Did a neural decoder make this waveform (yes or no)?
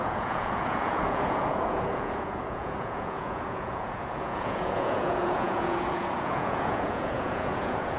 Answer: yes